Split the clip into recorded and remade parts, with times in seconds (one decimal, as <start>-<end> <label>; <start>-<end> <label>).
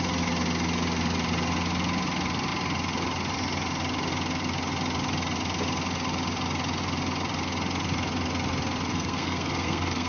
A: 0.0-8.9 recorded; 8.9-10.1 remade